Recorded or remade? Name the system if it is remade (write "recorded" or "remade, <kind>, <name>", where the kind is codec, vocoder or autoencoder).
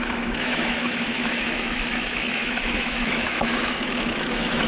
remade, autoencoder, DAC-VAE